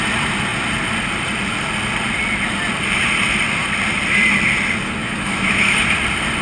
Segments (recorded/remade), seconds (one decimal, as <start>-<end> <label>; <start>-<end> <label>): 0.0-5.0 recorded; 5.0-5.8 remade; 5.8-6.4 recorded